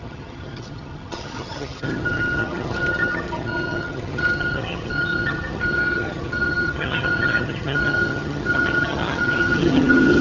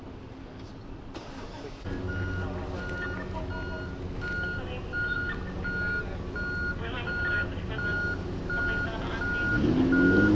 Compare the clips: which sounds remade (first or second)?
first